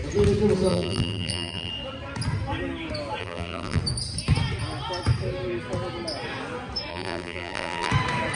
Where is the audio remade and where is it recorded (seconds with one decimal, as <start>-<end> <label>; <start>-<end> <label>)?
0.0-0.7 recorded; 0.7-1.7 remade; 1.7-3.2 recorded; 3.2-3.8 remade; 3.8-6.9 recorded; 6.9-7.9 remade; 7.9-8.3 recorded